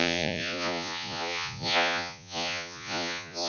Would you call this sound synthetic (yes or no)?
yes